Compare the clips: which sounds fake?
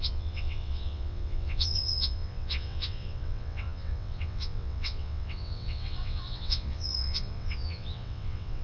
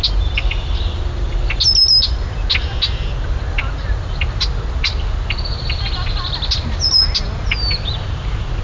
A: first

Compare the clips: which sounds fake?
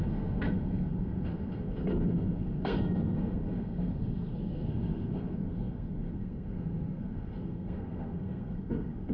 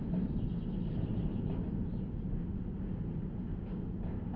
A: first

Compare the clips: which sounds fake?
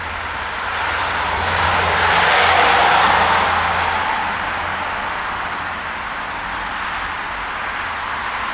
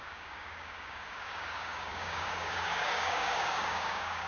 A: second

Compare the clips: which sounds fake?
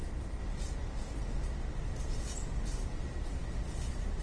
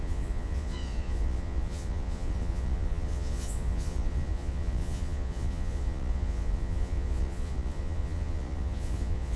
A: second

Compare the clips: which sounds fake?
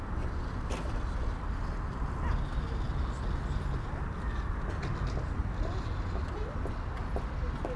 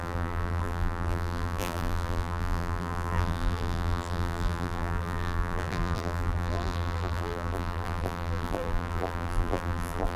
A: second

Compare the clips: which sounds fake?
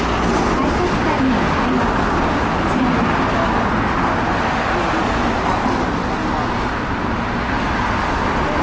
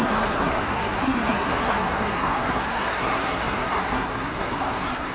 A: second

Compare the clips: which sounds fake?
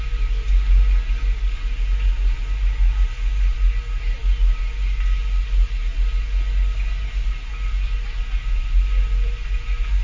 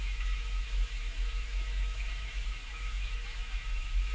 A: second